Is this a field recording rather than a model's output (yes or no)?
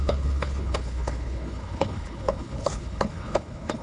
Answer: no